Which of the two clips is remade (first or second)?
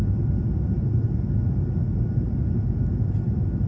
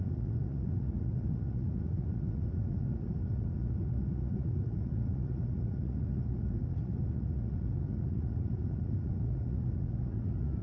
second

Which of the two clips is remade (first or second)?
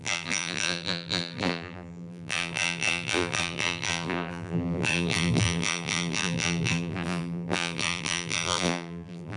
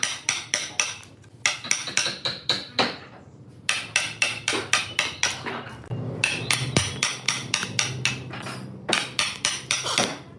first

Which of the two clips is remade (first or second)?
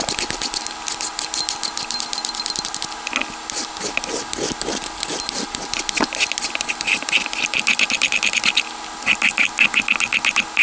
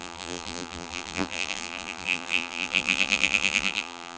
second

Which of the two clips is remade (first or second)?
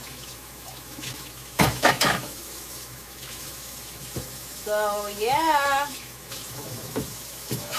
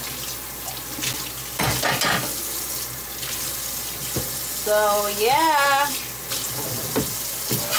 first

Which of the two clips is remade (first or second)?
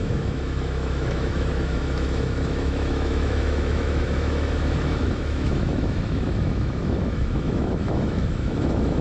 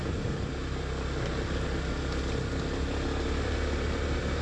first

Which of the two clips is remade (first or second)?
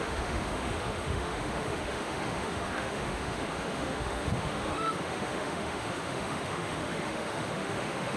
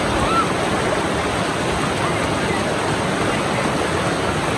first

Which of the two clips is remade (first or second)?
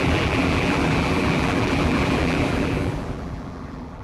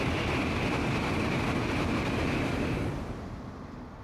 first